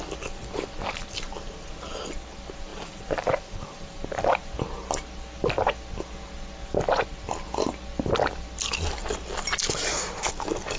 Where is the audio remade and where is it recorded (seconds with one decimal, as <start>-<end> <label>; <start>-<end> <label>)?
0.0-2.7 recorded; 2.7-4.0 remade; 4.0-10.8 recorded